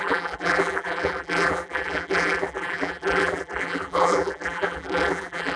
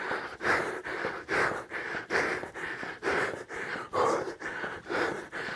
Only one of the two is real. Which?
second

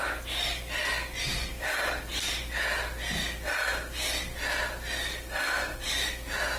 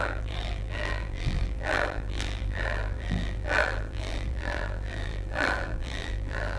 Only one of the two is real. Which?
first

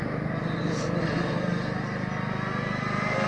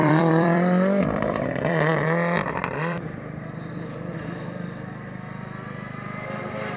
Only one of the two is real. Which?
first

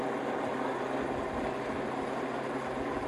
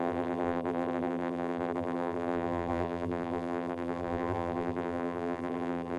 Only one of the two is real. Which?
first